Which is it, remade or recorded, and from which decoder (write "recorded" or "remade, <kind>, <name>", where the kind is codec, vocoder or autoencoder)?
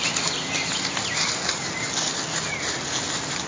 recorded